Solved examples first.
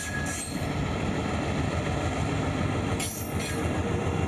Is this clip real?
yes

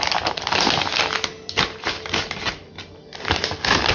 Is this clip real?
yes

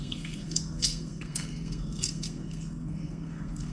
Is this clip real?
no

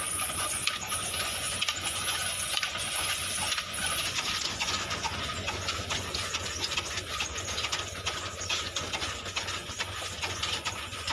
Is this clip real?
no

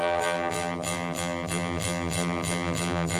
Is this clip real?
no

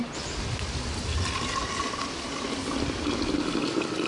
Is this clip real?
yes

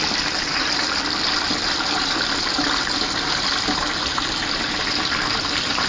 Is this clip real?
yes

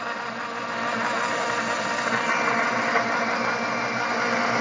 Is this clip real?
yes